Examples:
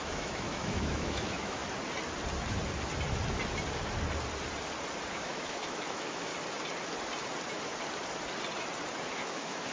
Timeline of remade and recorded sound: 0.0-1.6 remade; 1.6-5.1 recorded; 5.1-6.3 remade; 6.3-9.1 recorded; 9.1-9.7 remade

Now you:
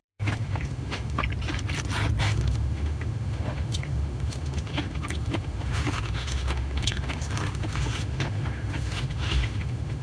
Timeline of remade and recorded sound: 0.0-1.2 remade; 1.2-2.2 recorded; 2.2-10.0 remade

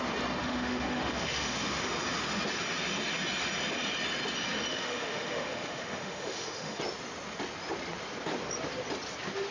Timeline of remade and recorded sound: 0.0-0.4 recorded; 0.4-1.9 remade; 1.9-4.7 recorded; 4.7-6.8 remade; 6.8-9.5 recorded

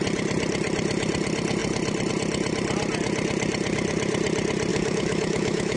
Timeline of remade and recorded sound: 0.0-4.7 recorded; 4.7-5.8 remade

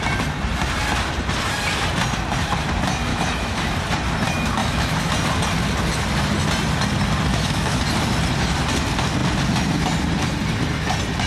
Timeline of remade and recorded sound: 0.0-3.1 recorded; 3.1-3.6 remade; 3.6-4.6 recorded; 4.6-5.1 remade; 5.1-7.3 recorded; 7.3-7.8 remade; 7.8-11.3 recorded

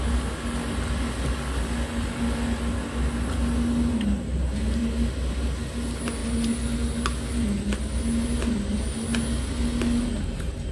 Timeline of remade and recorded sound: 0.0-10.7 recorded

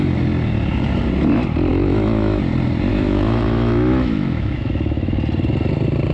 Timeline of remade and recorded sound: 0.0-1.7 recorded; 1.7-2.4 remade; 2.4-2.9 recorded; 2.9-5.1 remade; 5.1-6.1 recorded